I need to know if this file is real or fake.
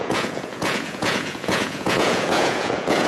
fake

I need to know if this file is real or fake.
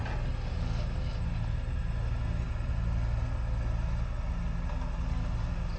real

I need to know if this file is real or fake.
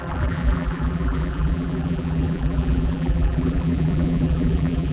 fake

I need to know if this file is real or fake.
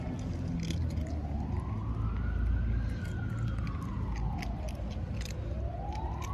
real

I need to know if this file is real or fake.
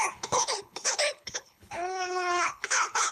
fake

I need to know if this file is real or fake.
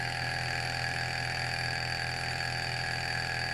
real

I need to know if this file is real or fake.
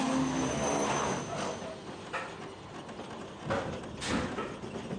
real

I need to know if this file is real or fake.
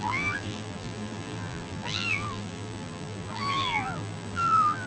fake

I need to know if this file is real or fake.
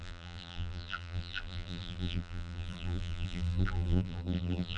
fake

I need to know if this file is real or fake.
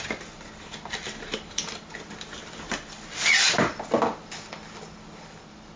real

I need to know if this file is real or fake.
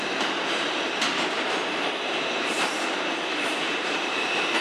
fake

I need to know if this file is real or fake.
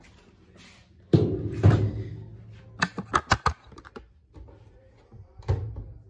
real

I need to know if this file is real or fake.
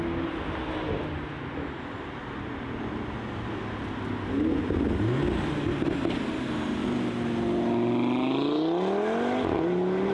real